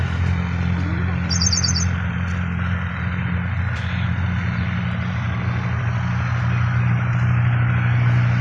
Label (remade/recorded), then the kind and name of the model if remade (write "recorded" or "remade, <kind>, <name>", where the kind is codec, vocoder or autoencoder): recorded